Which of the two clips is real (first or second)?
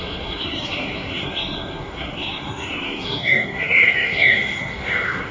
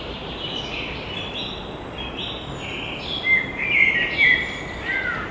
second